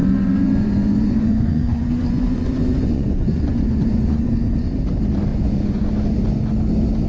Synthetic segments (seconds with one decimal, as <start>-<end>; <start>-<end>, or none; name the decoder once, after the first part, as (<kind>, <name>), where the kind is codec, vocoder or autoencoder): 0.0-4.3 (vocoder, Vocos); 5.3-5.9